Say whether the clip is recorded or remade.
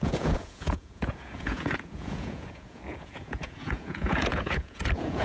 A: remade